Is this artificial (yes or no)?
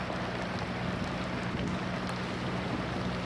no